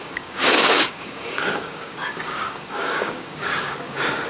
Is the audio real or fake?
fake